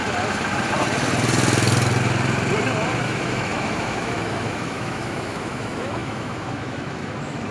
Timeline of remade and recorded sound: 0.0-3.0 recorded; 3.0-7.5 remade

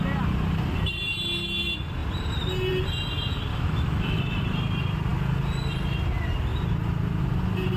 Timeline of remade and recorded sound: 0.0-3.5 recorded; 3.5-4.2 remade; 4.2-7.8 recorded

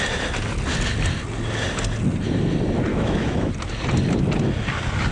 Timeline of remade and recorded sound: 0.0-2.9 recorded; 2.9-3.5 remade; 3.5-5.1 recorded

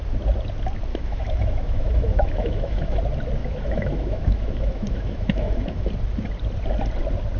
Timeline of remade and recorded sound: 0.0-0.9 recorded; 0.9-3.0 remade; 3.0-3.4 recorded; 3.4-5.9 remade; 5.9-7.4 recorded